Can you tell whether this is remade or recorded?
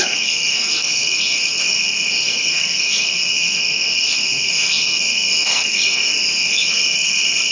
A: remade